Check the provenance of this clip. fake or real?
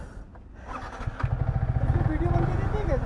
real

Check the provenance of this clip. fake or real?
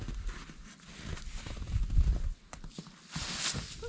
real